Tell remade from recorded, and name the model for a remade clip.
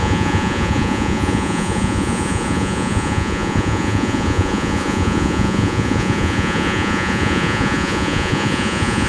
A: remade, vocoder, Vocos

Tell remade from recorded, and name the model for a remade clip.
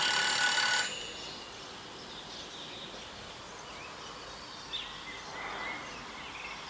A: recorded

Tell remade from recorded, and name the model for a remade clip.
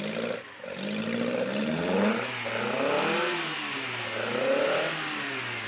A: recorded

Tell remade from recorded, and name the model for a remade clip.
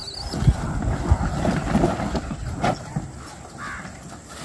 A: recorded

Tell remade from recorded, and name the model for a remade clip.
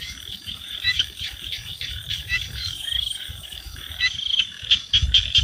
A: remade, codec, DAC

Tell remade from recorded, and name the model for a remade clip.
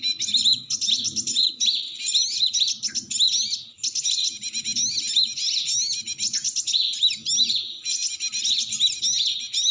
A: recorded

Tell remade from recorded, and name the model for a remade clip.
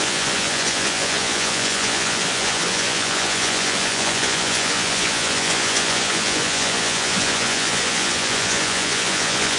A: remade, vocoder, Vocos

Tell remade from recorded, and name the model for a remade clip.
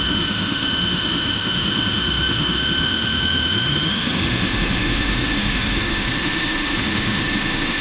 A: remade, autoencoder, DAC-VAE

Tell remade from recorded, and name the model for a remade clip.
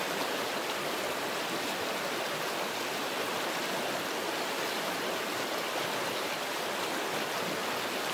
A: recorded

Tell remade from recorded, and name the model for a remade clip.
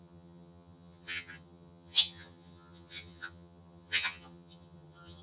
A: remade, vocoder, HiFi-GAN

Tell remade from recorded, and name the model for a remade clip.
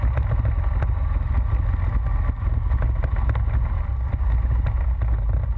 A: recorded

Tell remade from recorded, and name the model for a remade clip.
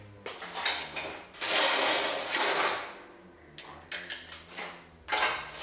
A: recorded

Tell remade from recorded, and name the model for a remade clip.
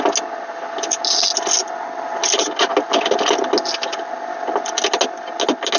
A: recorded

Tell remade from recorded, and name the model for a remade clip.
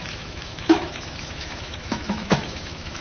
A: remade, autoencoder, DAC-VAE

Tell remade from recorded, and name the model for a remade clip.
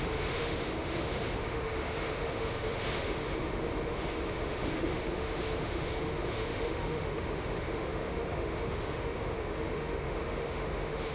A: remade, autoencoder, DAC-VAE